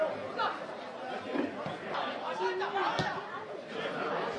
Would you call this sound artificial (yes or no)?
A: no